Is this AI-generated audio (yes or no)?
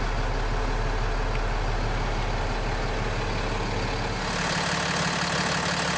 no